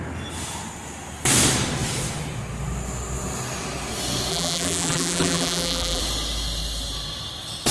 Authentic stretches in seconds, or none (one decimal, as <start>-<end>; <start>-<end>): 0.0-4.3; 6.0-7.7

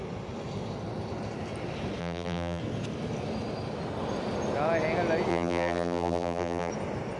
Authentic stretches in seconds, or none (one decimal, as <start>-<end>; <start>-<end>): 0.0-2.0; 2.6-5.3; 6.7-7.2

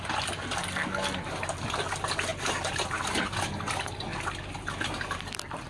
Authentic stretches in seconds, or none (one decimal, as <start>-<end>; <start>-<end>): 0.0-5.7

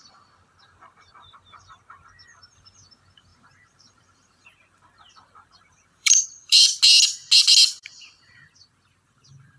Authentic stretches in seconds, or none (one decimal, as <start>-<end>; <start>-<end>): 0.0-3.3; 6.8-9.6

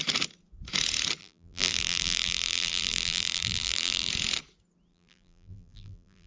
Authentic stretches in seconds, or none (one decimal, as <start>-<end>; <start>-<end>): 0.0-1.2; 4.1-4.9